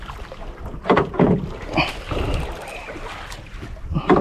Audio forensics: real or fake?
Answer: real